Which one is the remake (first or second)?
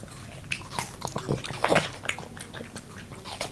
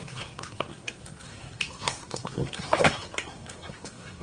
second